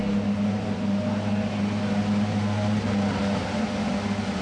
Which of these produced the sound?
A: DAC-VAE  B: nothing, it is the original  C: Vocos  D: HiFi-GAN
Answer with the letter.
B